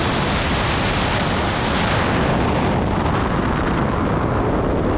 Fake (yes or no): no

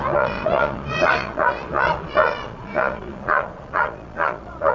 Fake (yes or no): yes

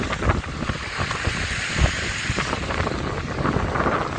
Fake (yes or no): no